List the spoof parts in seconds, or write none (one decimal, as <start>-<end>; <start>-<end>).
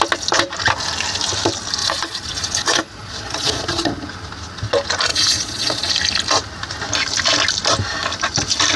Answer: 1.8-3.9; 5.1-5.9